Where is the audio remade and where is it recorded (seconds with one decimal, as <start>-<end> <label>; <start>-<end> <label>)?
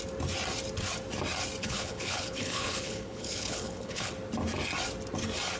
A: 0.0-1.6 recorded; 1.6-4.1 remade; 4.1-5.6 recorded